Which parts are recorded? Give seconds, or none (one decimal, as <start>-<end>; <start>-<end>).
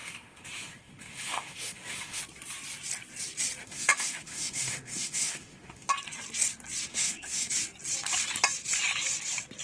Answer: 2.2-3.6; 5.9-6.9; 7.5-9.6